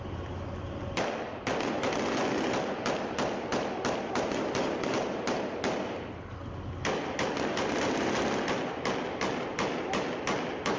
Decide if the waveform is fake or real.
real